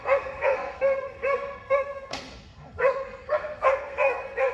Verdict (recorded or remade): remade